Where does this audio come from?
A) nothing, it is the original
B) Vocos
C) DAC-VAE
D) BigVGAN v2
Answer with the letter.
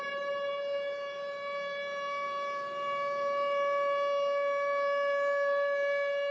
A